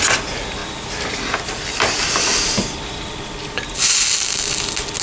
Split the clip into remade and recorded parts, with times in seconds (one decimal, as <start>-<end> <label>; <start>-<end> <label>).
0.0-5.0 recorded